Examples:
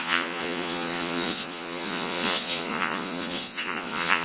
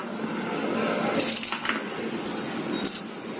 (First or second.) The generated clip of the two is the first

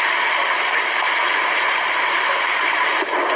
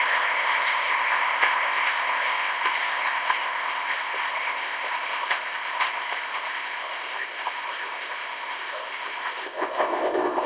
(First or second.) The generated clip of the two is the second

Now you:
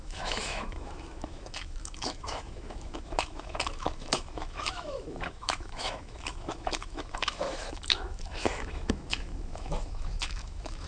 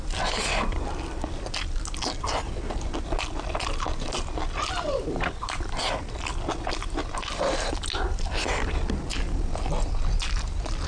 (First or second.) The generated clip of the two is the first